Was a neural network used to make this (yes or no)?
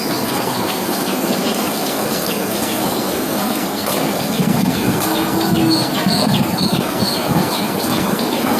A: yes